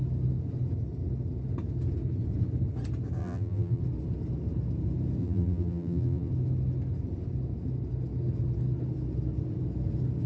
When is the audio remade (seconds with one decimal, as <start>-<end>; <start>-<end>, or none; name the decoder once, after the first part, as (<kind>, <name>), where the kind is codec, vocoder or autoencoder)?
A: 3.2-3.8 (vocoder, BigVGAN v2); 5.2-6.3